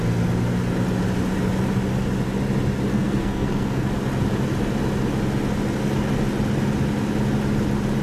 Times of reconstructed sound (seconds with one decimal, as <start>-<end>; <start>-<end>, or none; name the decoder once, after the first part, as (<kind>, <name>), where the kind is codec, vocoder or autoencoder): 2.9-3.9 (codec, SNAC)